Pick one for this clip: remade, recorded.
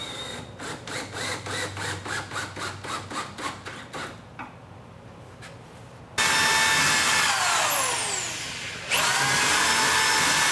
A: recorded